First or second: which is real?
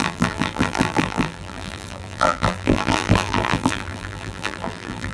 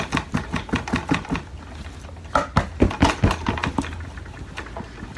second